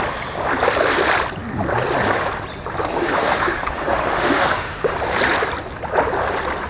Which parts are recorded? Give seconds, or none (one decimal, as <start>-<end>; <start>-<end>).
0.0-2.9; 4.9-6.7